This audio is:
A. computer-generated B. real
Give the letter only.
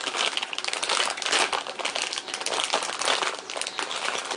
B